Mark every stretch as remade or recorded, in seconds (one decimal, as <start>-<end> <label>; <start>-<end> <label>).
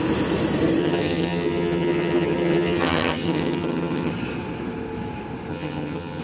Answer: 0.0-0.8 recorded; 0.8-4.1 remade; 4.1-5.5 recorded; 5.5-6.2 remade